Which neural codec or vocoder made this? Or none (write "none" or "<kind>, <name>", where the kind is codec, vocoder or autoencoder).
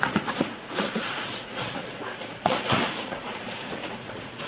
vocoder, Vocos